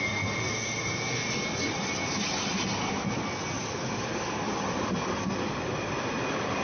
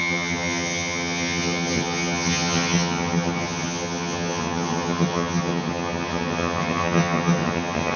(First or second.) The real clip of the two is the first